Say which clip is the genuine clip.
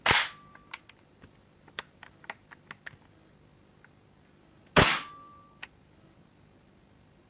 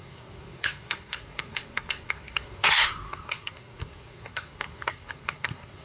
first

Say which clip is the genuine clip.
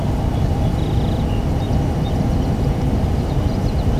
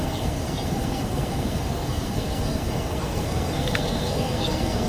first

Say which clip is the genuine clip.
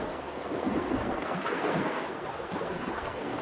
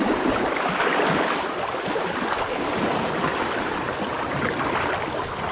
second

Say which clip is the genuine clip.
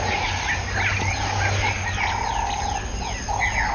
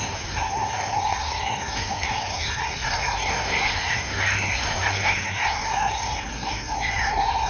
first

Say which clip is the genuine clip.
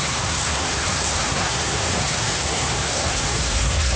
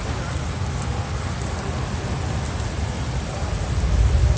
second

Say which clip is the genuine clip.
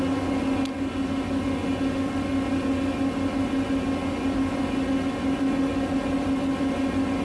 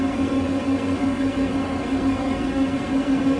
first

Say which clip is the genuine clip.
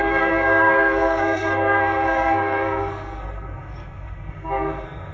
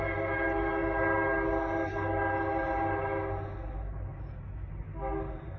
second